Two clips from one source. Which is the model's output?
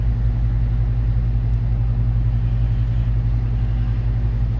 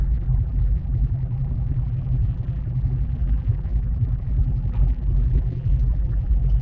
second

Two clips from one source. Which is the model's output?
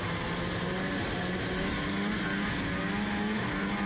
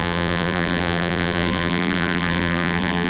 second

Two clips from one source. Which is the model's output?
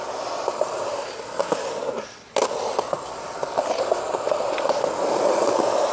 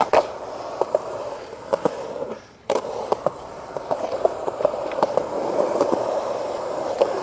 second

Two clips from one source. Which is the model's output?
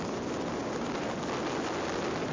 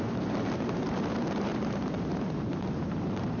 second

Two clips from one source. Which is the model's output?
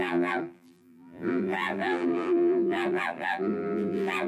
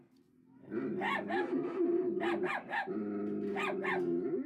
first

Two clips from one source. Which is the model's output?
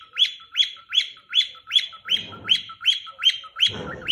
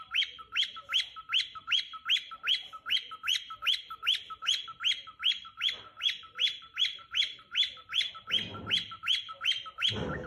first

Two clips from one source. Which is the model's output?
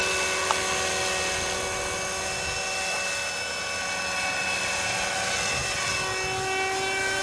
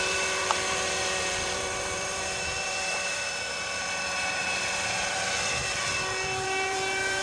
second